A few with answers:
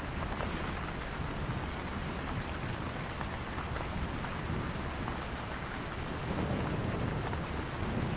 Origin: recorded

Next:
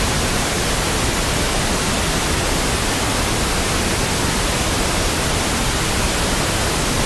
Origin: recorded